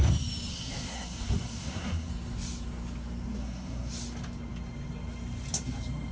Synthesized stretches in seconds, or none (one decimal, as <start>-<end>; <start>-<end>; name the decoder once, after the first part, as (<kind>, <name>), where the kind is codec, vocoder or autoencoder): 0.5-2.1 (codec, SNAC); 3.4-3.9